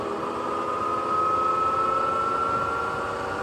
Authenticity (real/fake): real